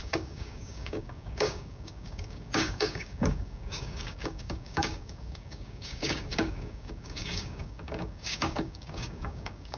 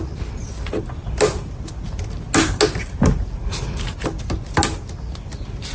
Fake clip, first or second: first